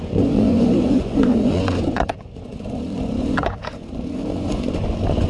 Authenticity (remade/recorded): remade